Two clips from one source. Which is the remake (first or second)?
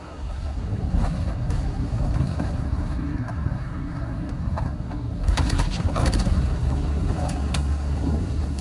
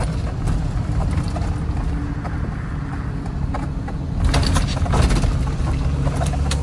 first